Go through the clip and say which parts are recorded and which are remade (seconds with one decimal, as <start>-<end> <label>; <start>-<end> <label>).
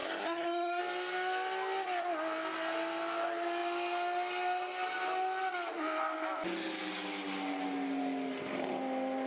0.0-0.8 remade; 0.8-9.3 recorded